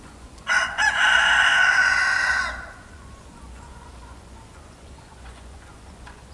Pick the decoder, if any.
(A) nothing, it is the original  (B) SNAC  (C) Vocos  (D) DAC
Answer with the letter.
C